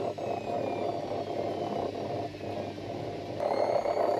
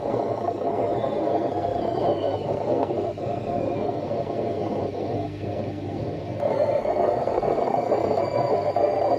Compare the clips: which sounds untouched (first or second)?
first